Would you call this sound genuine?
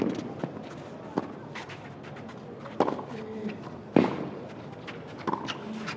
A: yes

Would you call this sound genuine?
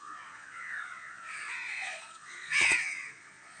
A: no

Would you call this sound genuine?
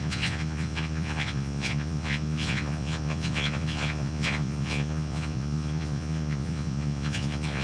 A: no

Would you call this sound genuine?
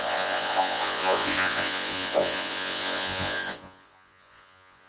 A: no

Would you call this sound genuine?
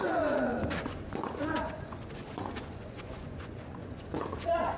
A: no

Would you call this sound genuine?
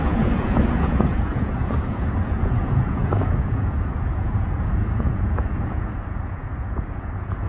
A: no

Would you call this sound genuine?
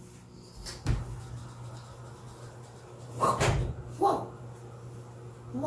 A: yes